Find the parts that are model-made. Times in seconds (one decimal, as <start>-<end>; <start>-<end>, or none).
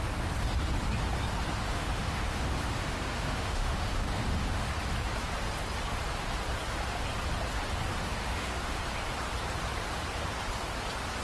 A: 1.6-4.7; 8.2-8.8